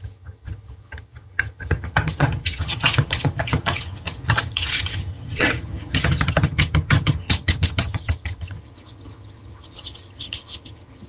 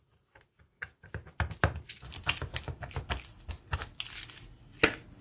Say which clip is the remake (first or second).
first